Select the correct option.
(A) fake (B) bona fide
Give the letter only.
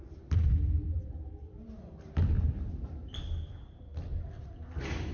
B